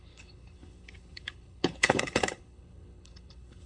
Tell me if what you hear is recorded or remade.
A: remade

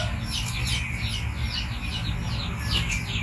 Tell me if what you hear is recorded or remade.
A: recorded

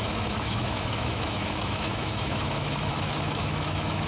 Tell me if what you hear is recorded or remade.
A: remade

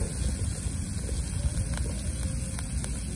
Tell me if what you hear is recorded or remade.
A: recorded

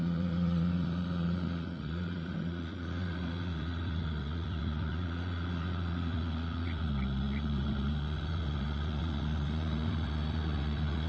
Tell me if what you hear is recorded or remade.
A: remade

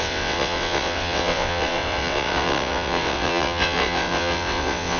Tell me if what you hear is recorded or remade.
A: remade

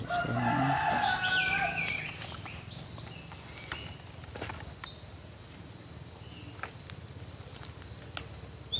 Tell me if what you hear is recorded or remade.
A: recorded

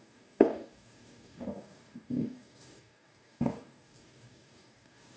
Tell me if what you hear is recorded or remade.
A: remade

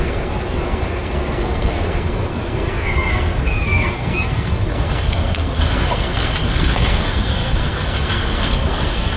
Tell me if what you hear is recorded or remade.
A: remade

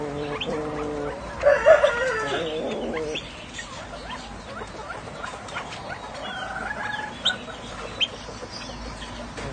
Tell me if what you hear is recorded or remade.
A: recorded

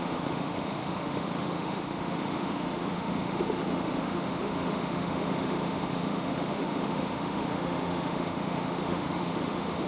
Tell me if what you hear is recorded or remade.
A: remade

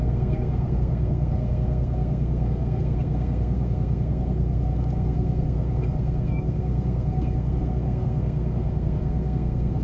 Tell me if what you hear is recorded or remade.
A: remade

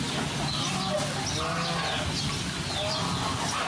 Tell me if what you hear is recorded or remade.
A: recorded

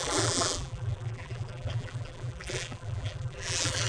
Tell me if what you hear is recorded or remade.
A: remade